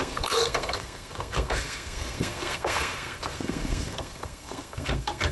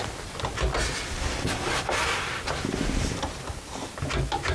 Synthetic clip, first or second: first